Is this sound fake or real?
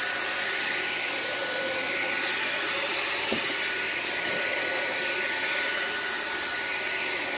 real